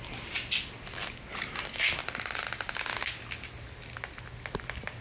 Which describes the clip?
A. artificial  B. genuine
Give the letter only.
B